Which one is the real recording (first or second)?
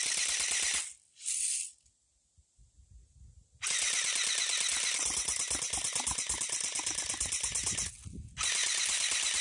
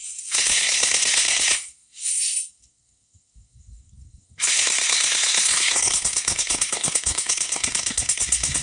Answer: first